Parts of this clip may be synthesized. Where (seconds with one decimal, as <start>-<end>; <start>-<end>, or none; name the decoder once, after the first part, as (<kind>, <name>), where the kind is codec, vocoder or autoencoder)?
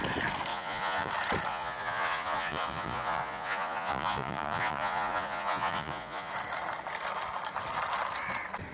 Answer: 0.5-1.1 (vocoder, Vocos); 1.5-6.3